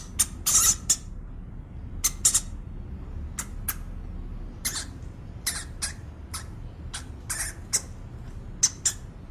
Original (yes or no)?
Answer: yes